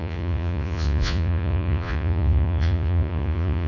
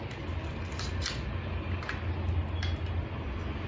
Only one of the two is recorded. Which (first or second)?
second